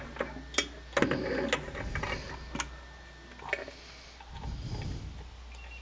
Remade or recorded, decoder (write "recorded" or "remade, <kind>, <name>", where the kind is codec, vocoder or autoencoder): recorded